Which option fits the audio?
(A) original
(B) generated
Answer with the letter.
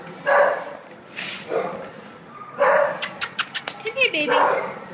A